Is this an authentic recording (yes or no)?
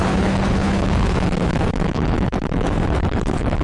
no